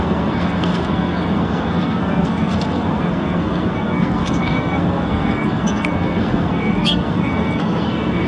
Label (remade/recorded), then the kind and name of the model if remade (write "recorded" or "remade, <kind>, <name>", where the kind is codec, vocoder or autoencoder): remade, codec, SNAC